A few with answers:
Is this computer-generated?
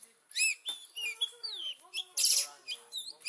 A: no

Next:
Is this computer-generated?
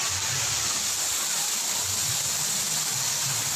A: no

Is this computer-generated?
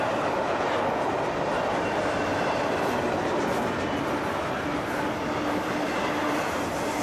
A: no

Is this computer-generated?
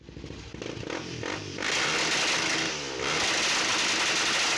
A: no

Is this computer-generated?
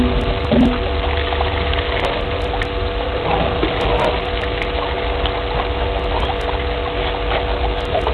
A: no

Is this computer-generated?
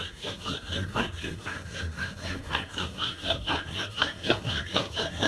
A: yes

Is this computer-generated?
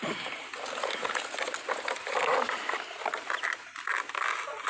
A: no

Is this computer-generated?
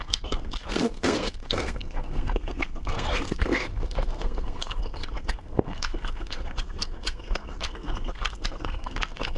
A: yes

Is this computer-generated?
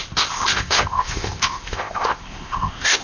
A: yes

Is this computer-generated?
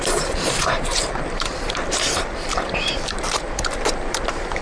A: yes